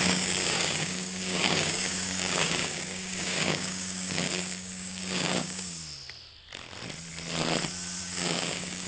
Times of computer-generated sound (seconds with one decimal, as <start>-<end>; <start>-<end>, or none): 0.0-5.8; 8.0-8.9